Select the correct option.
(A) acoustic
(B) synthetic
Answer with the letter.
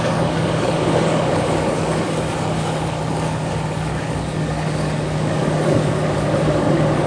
B